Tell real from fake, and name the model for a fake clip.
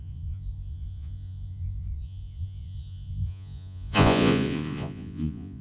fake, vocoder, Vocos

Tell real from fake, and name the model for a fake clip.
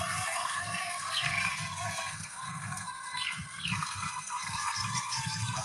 fake, codec, SNAC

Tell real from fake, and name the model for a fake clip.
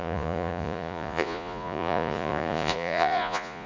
fake, vocoder, Vocos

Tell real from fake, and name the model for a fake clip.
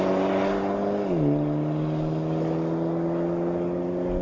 real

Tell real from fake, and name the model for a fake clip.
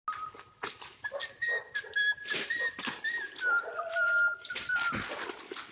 real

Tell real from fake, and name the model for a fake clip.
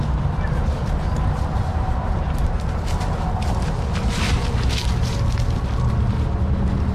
real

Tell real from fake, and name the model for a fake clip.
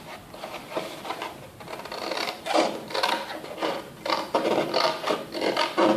real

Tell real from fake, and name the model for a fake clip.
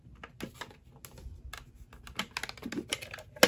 real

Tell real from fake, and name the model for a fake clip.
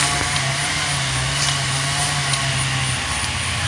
fake, vocoder, BigVGAN v2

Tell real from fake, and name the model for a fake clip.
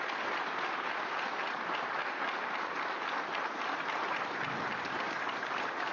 real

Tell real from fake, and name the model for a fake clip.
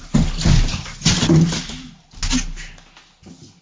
real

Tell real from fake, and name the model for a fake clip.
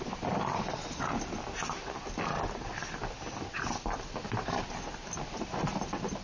fake, vocoder, BigVGAN v2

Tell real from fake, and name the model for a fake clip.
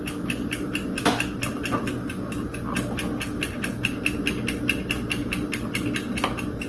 real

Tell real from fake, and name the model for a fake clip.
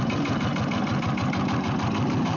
real